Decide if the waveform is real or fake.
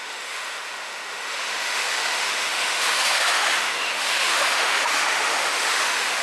fake